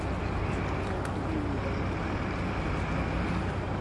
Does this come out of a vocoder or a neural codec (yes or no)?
no